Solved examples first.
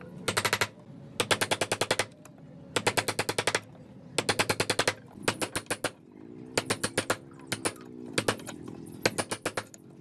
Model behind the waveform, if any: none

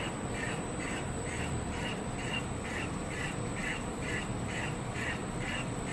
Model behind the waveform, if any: vocoder, BigVGAN v2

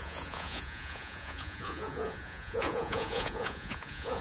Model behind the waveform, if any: vocoder, Vocos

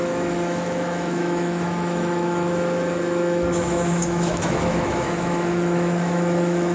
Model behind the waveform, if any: autoencoder, DAC-VAE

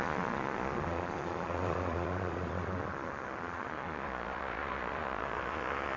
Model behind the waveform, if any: vocoder, Vocos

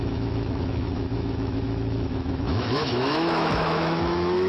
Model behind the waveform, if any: autoencoder, DAC-VAE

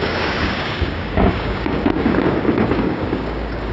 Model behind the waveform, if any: codec, DAC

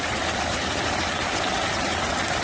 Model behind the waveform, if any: vocoder, BigVGAN v2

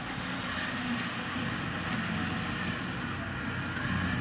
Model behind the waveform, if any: none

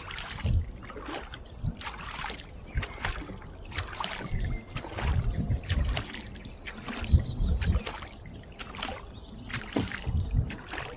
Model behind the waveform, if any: none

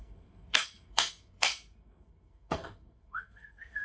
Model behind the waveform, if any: codec, SNAC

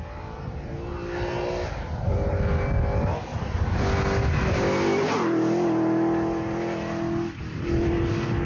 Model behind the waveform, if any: none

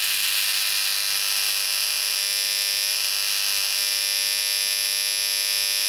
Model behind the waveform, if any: none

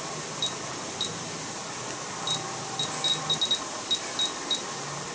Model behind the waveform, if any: none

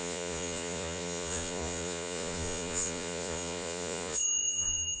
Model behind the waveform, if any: vocoder, Vocos